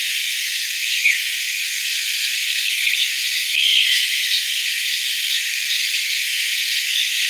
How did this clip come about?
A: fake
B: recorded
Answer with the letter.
A